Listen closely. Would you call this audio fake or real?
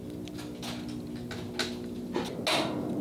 real